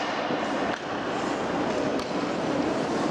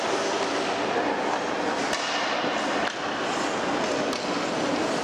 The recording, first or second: second